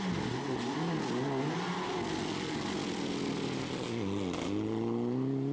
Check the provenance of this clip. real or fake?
real